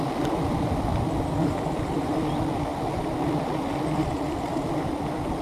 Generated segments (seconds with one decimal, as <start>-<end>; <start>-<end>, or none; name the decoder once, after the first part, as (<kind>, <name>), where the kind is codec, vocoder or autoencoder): 0.9-2.0 (vocoder, BigVGAN v2)